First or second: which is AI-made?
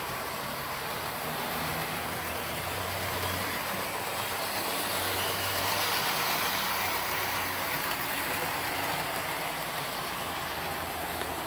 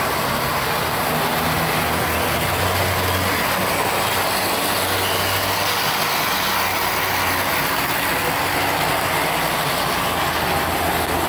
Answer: first